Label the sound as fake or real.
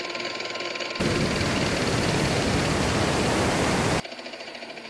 real